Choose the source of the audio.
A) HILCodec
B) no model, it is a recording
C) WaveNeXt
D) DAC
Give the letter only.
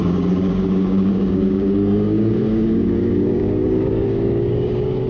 D